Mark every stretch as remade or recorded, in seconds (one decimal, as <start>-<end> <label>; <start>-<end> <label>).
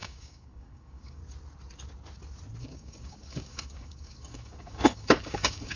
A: 0.0-1.2 remade; 1.2-2.6 recorded; 2.6-5.8 remade